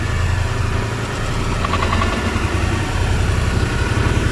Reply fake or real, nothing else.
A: real